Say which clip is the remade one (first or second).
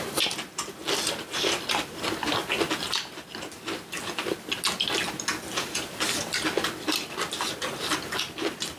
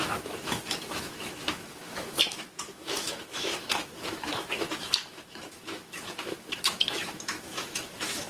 second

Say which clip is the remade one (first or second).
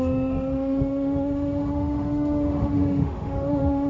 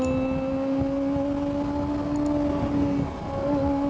first